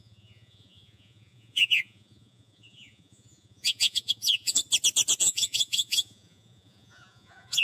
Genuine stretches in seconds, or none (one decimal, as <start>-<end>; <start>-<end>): 4.6-5.2